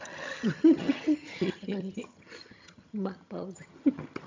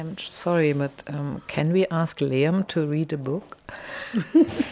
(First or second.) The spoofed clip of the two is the first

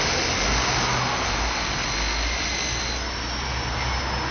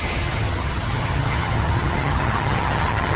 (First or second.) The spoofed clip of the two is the second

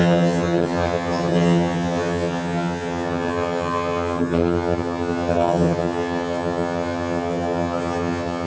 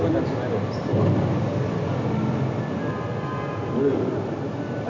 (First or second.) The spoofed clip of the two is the first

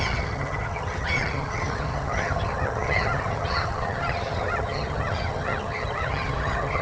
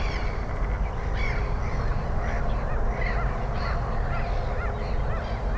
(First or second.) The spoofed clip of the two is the first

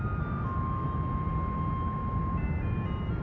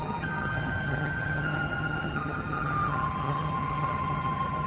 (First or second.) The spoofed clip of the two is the second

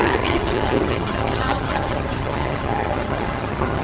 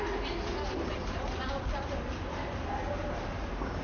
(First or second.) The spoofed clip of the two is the first